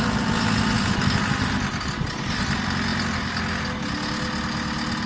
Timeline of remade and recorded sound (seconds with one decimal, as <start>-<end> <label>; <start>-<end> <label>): 0.0-5.1 recorded